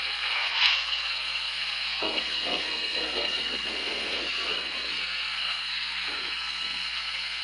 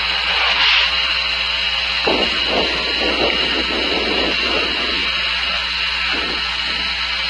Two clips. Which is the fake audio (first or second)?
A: first